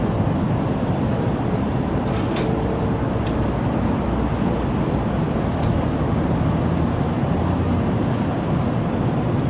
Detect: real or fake real